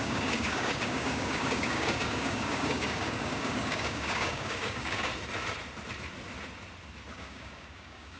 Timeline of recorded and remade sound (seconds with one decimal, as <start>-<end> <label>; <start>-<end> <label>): 0.0-5.1 remade; 5.1-7.1 recorded; 7.1-8.2 remade

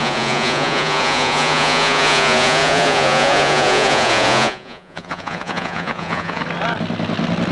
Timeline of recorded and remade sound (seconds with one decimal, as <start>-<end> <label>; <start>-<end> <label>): 0.0-6.4 remade; 6.4-7.5 recorded

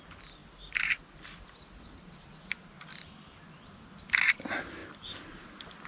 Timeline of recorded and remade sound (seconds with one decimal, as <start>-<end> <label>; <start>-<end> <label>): 0.0-5.9 recorded